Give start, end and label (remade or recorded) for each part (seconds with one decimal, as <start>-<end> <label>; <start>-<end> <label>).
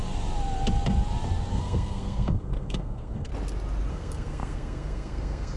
0.0-1.5 recorded; 1.5-3.3 remade; 3.3-3.9 recorded; 3.9-5.6 remade